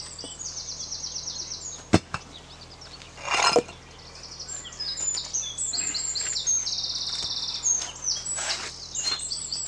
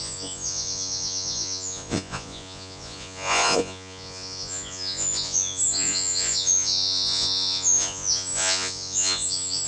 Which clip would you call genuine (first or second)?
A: first